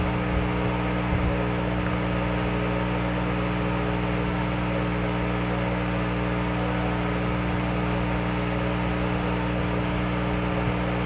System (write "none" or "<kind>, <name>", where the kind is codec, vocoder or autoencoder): none